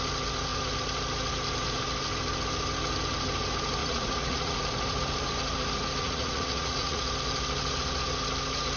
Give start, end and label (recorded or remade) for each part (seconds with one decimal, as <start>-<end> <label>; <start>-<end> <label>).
0.0-3.8 recorded; 3.8-4.6 remade; 4.6-6.0 recorded; 6.0-7.0 remade; 7.0-8.8 recorded